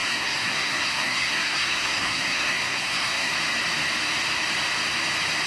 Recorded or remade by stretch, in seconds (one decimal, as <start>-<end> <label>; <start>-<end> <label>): 0.0-3.3 remade; 3.3-5.5 recorded